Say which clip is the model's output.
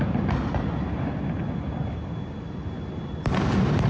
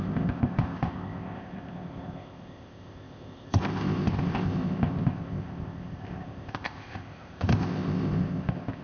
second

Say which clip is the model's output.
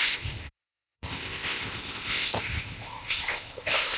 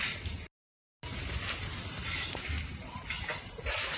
first